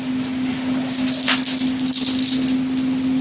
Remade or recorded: recorded